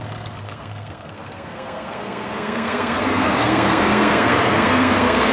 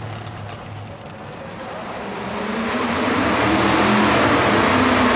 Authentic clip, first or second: second